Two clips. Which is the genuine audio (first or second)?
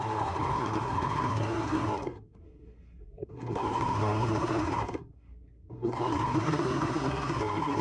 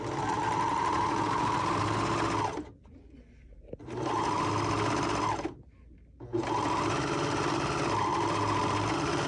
second